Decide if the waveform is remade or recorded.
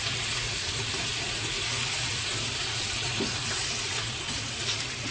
remade